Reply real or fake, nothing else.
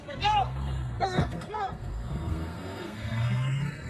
fake